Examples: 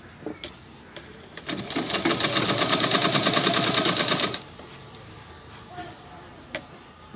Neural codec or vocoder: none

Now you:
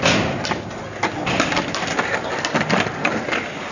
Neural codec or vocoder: none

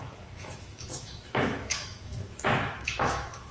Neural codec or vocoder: autoencoder, DAC-VAE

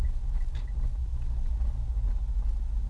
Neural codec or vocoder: none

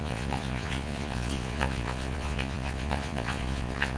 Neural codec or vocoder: vocoder, Vocos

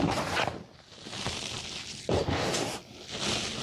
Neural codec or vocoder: none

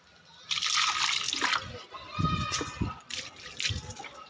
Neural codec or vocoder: none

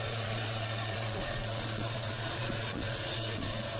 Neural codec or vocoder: vocoder, Vocos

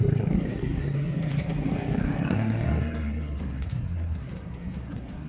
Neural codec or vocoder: codec, SNAC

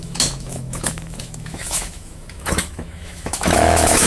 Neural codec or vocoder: autoencoder, DAC-VAE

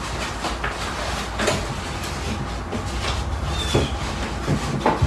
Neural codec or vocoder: none